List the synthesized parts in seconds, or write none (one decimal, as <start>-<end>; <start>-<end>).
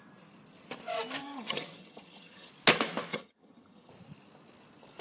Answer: 1.2-2.5; 3.1-3.9